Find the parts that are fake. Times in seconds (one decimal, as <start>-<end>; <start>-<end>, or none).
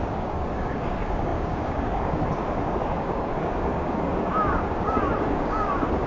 0.0-6.1